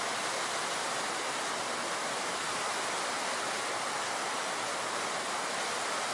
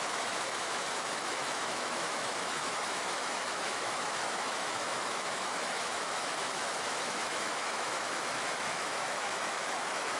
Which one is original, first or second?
first